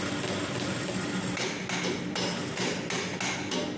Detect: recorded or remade recorded